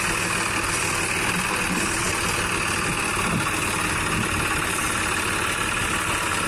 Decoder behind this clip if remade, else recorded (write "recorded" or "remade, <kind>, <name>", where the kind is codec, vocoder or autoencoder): recorded